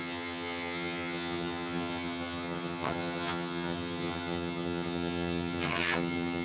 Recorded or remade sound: remade